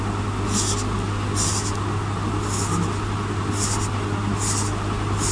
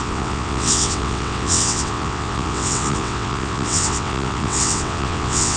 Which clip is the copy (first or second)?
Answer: second